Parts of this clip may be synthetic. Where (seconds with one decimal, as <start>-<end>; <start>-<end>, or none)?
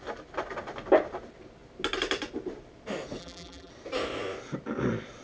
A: 3.2-3.7